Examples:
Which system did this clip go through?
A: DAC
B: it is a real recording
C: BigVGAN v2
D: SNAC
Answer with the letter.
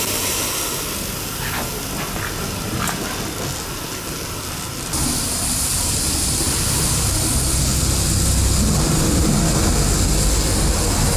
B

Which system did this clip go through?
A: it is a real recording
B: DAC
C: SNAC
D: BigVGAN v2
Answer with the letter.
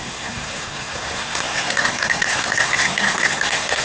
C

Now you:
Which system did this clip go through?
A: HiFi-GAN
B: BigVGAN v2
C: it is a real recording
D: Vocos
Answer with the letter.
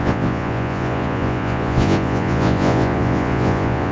D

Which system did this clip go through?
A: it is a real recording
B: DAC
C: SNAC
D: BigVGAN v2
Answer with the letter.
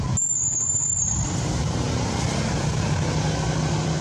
A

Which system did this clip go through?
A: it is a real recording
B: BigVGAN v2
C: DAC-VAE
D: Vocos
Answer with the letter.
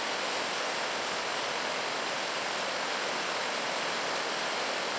A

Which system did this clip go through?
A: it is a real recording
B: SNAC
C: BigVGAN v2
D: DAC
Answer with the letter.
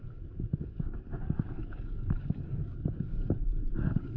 D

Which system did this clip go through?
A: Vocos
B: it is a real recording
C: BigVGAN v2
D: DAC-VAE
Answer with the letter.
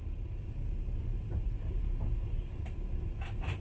B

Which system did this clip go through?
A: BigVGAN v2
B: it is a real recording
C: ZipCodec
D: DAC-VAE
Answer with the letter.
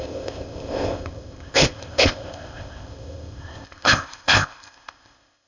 C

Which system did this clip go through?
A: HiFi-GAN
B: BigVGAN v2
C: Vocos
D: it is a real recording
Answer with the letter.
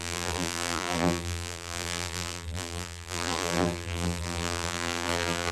B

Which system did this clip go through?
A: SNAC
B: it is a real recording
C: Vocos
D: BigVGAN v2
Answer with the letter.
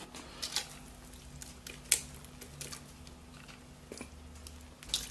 B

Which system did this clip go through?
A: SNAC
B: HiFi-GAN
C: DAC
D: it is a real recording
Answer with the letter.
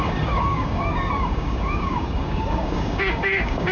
C